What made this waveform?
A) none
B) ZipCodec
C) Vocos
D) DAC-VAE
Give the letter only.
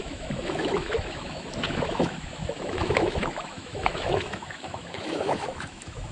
D